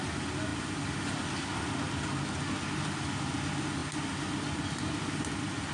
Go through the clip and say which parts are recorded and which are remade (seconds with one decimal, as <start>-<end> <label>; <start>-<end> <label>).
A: 0.0-5.7 recorded